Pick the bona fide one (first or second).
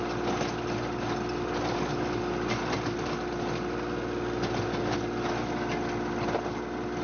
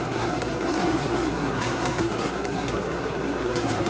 first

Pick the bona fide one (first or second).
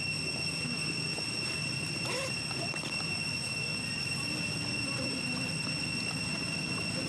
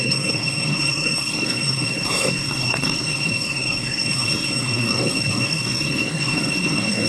first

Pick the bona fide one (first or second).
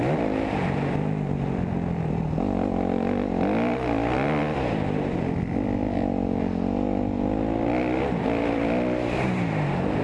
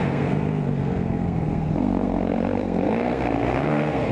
first